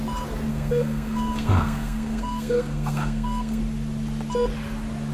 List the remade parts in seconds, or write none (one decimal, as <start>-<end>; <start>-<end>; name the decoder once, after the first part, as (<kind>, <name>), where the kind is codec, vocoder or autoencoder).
0.5-3.6 (codec, SNAC)